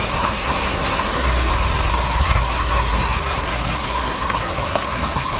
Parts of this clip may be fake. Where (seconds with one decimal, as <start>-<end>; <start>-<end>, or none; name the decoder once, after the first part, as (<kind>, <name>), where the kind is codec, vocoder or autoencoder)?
0.0-1.5 (codec, SNAC); 1.9-5.4